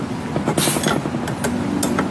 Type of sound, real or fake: real